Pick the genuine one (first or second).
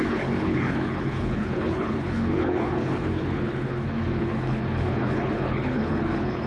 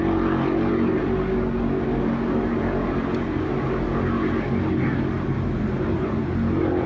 second